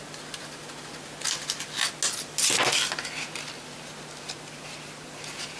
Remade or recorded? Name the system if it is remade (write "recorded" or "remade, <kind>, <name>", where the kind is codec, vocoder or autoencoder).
recorded